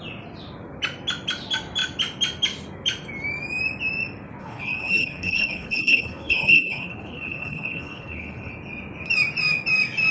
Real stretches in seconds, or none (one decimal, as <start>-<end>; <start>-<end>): 0.0-4.4; 8.5-10.1